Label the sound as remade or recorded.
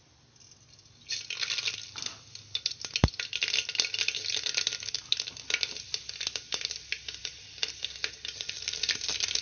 recorded